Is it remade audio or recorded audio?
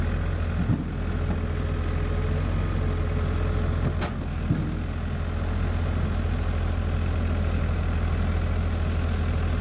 recorded